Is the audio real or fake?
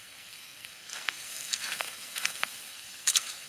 fake